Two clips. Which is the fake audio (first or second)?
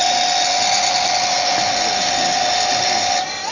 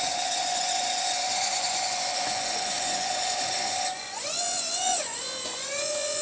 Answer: second